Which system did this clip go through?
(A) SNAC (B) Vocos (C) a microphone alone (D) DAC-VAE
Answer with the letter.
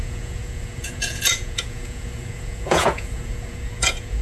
B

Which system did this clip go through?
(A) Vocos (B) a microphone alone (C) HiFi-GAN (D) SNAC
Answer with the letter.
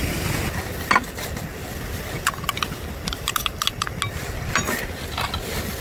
B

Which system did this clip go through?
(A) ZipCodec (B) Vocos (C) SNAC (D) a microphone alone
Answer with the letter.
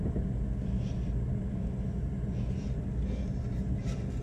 D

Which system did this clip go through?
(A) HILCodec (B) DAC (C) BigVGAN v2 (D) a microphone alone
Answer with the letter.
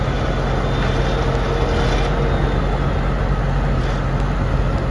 D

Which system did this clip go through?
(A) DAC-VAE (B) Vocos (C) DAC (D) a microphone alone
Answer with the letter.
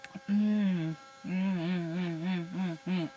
C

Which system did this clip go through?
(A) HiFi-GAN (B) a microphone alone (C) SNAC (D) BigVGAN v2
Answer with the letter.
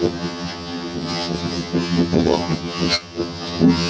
A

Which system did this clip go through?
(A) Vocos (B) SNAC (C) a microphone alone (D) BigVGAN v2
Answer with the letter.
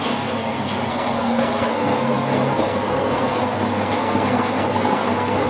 B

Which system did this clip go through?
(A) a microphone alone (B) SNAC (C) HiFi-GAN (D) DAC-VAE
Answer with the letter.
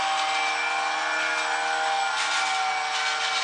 A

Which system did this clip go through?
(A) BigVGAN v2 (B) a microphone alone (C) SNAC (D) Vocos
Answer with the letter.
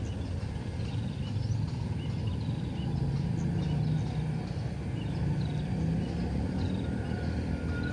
B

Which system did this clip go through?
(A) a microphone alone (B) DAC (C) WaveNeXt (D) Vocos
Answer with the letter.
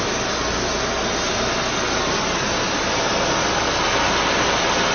A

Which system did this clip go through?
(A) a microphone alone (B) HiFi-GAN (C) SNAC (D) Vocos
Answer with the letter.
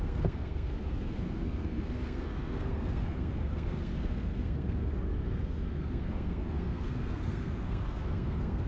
C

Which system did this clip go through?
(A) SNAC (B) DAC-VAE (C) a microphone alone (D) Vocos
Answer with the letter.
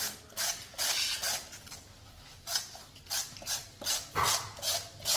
C